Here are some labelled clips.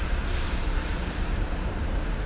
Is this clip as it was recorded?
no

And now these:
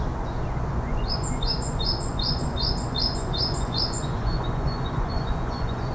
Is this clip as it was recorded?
no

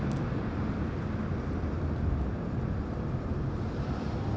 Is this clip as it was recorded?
yes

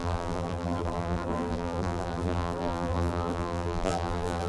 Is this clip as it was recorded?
no